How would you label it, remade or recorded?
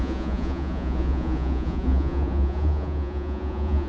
remade